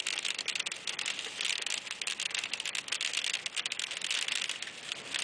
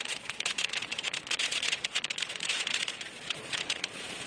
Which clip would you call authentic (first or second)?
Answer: first